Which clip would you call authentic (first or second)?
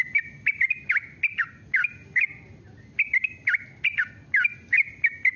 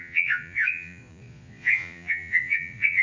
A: first